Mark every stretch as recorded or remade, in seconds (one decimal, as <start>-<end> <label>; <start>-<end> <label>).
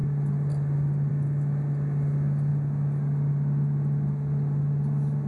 0.0-5.3 recorded